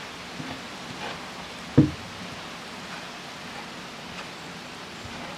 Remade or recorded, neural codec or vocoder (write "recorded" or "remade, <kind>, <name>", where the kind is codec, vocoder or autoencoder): recorded